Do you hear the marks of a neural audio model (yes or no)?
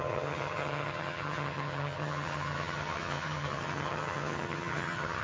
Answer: yes